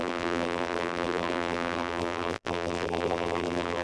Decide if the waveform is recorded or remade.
remade